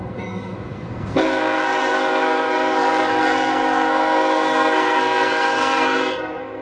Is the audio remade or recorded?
remade